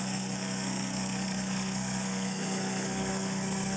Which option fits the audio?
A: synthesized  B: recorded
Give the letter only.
A